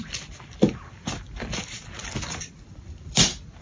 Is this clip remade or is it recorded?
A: remade